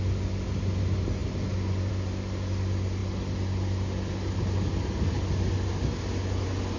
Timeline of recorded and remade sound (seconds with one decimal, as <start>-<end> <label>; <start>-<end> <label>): 0.0-6.8 recorded